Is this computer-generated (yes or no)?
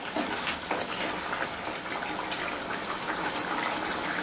no